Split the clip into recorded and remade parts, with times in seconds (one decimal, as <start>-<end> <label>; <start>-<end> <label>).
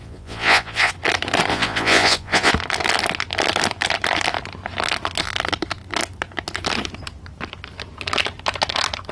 0.0-0.9 remade; 0.9-1.5 recorded; 1.5-2.5 remade; 2.5-9.1 recorded